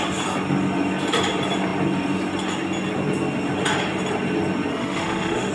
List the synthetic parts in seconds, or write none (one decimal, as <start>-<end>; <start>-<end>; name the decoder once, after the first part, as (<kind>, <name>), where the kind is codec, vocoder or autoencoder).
4.7-5.5 (autoencoder, DAC-VAE)